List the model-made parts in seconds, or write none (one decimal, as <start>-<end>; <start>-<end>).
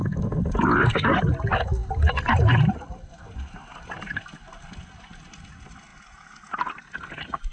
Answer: none